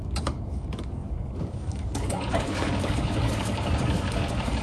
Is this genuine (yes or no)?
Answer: no